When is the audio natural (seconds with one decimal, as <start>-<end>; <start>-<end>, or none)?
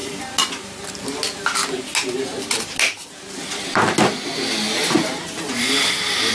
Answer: 0.0-6.3